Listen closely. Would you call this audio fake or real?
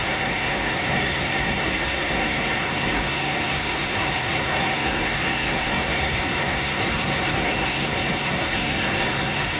fake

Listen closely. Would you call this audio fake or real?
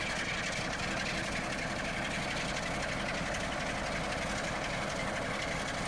real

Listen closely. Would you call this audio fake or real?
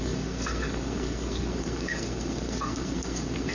fake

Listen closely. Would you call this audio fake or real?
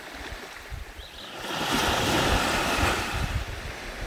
fake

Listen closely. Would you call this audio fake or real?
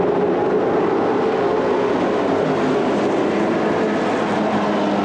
real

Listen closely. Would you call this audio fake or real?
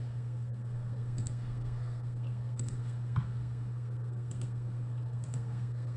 fake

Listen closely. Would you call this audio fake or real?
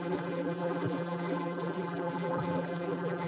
fake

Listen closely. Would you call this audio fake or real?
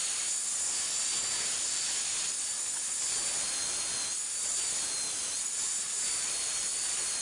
real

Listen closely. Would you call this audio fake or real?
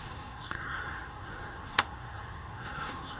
fake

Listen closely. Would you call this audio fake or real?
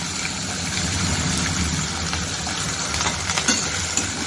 real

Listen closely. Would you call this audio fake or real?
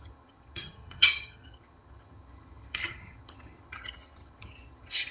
fake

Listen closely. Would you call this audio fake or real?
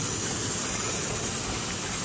real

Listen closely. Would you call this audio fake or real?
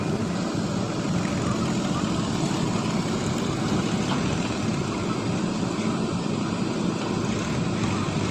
real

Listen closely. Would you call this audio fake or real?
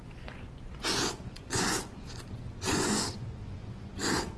fake